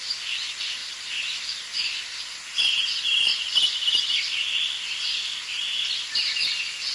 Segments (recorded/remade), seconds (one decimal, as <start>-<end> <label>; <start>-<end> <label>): 0.0-0.8 recorded; 0.8-2.0 remade; 2.0-3.3 recorded; 3.3-4.0 remade; 4.0-5.1 recorded; 5.1-5.8 remade; 5.8-6.9 recorded